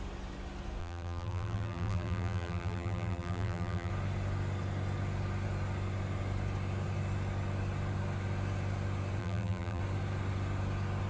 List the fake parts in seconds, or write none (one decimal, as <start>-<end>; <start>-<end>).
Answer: 0.8-3.9; 9.2-9.8